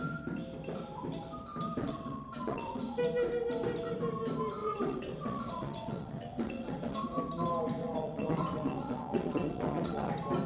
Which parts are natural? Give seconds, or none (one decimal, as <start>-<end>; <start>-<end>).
0.0-1.8; 3.0-4.6; 7.2-7.8; 10.1-10.5